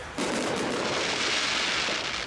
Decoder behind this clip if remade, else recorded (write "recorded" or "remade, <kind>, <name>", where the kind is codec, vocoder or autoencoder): recorded